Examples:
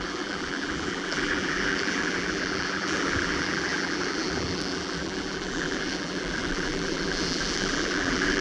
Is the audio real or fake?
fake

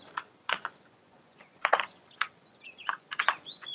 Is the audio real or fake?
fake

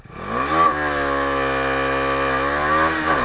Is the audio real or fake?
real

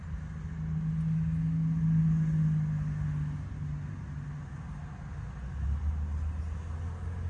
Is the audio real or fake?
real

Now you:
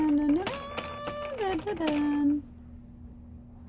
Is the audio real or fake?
real